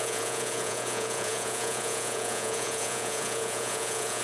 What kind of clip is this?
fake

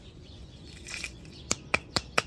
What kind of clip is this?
fake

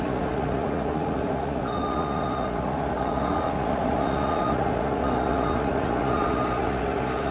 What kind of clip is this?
fake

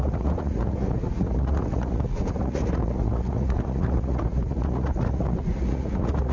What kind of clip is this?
fake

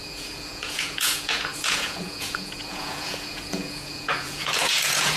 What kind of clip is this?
fake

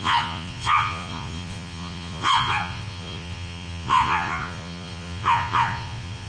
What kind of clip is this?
fake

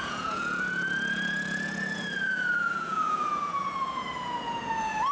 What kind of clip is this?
fake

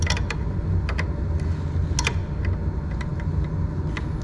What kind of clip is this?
real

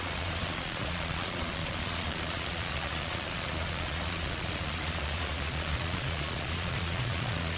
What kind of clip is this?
fake